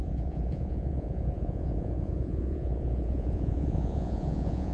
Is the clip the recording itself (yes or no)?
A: no